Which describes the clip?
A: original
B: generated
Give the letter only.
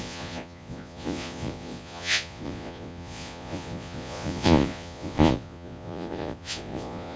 B